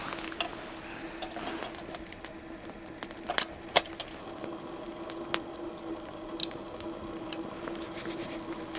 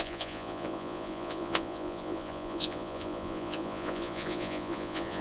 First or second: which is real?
first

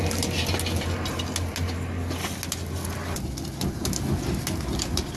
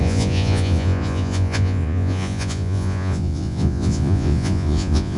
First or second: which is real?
first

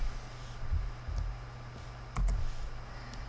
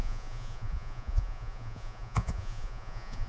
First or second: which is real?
first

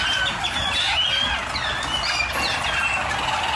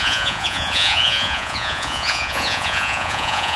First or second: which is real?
first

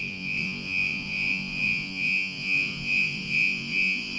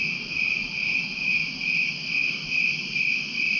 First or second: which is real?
second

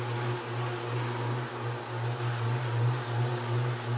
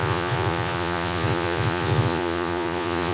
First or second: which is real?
first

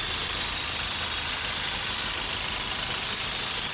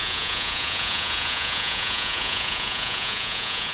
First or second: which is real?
first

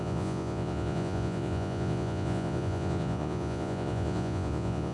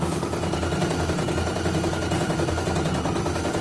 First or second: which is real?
second